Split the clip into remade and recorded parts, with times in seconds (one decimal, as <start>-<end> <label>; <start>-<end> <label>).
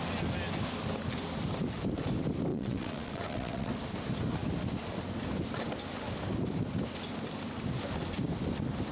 0.0-2.5 recorded; 2.5-3.7 remade; 3.7-8.9 recorded